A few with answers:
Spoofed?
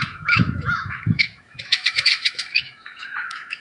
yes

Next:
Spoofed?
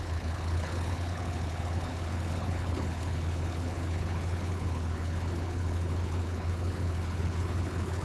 yes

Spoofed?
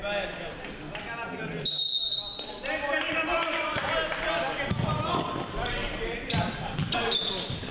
no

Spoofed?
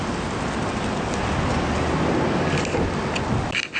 no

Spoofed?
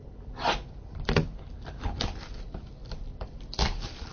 no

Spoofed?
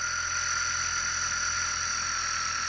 no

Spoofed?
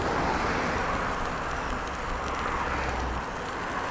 no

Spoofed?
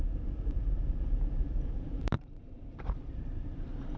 yes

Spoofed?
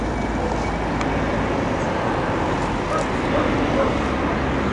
no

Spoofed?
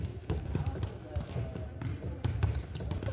no